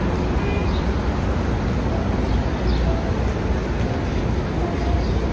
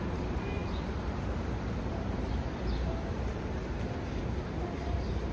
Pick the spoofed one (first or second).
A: second